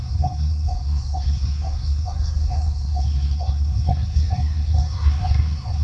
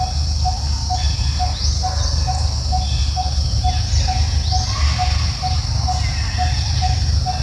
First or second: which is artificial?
first